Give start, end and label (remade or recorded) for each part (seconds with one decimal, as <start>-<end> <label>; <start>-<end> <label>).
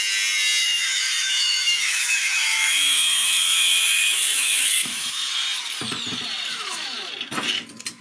0.0-0.6 recorded; 0.6-5.3 remade; 5.3-6.5 recorded; 6.5-7.1 remade; 7.1-8.0 recorded